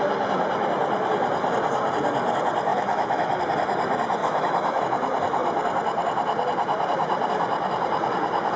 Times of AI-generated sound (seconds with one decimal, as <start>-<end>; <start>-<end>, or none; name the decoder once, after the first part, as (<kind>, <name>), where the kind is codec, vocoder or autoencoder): 2.7-3.4 (autoencoder, DAC-VAE); 4.2-4.8